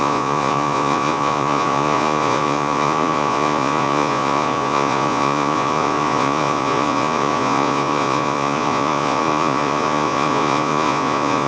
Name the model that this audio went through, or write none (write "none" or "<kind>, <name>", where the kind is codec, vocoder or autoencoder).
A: vocoder, Vocos